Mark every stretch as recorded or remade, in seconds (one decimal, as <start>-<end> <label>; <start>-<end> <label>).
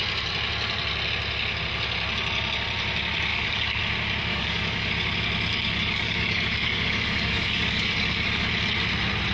0.0-3.3 recorded; 3.3-3.8 remade; 3.8-4.3 recorded; 4.3-4.9 remade; 4.9-5.5 recorded; 5.5-8.5 remade; 8.5-9.3 recorded